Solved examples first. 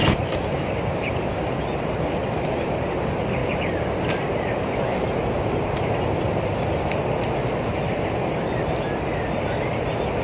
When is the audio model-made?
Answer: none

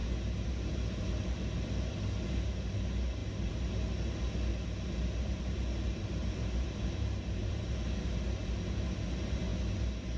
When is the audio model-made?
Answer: 6.2-7.6 (vocoder, BigVGAN v2)

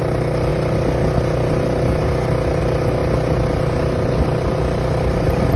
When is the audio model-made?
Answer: none